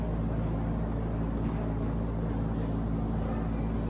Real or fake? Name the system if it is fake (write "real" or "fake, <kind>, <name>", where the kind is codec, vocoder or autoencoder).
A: real